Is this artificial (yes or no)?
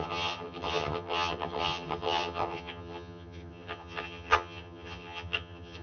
yes